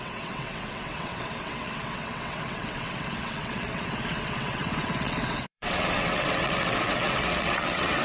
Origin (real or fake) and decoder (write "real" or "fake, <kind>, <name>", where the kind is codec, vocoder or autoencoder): fake, vocoder, WaveNeXt